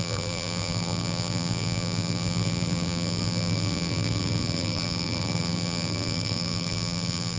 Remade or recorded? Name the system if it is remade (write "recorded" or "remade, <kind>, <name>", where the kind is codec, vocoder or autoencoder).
remade, vocoder, BigVGAN v2